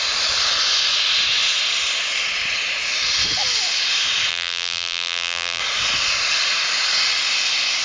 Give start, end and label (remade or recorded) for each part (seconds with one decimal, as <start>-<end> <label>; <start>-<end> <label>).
0.0-4.3 recorded; 4.3-5.6 remade; 5.6-7.8 recorded